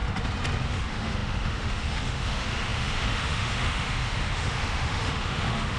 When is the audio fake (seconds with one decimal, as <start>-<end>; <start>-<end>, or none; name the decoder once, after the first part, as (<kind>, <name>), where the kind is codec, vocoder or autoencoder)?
0.7-5.8 (autoencoder, DAC-VAE)